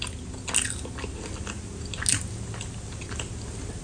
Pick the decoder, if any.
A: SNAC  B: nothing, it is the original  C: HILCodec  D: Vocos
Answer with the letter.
B